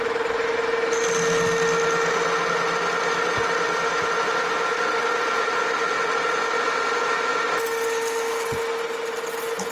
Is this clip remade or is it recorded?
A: recorded